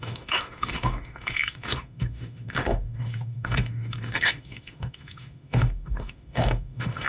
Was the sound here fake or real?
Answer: fake